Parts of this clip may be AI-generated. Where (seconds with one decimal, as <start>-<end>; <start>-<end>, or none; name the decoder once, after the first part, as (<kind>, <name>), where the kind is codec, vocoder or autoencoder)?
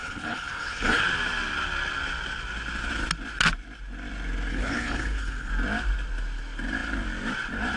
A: 0.0-1.0 (codec, HILCodec); 4.5-5.5